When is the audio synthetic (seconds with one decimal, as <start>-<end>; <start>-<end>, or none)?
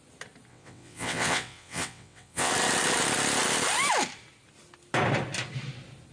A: 0.5-2.5